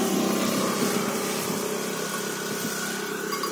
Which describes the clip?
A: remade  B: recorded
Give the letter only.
B